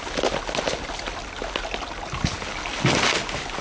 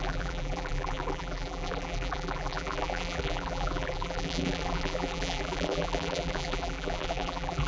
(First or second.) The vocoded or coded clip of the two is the second